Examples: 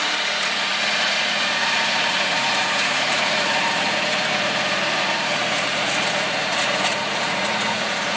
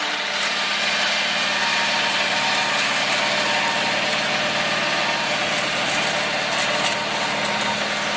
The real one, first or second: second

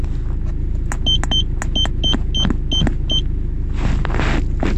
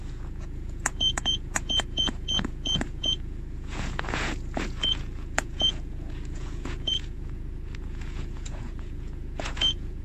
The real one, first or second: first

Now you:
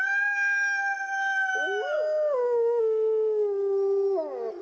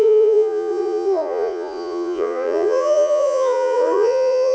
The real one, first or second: first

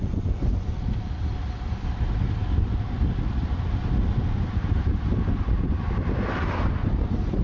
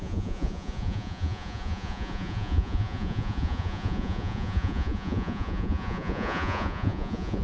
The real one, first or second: first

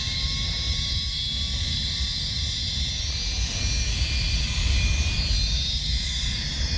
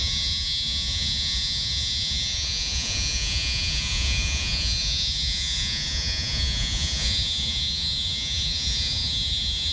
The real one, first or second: first